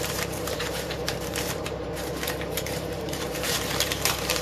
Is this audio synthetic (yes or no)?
yes